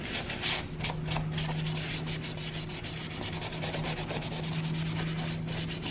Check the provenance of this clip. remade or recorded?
recorded